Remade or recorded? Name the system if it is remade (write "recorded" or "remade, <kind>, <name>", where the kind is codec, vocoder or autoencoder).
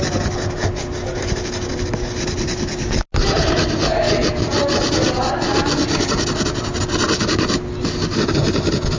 recorded